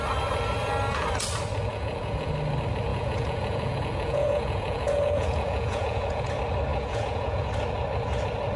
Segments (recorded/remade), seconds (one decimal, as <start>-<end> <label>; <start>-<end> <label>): 0.0-1.7 recorded; 1.7-2.3 remade; 2.3-2.9 recorded; 2.9-6.3 remade; 6.3-6.7 recorded; 6.7-7.5 remade; 7.5-8.6 recorded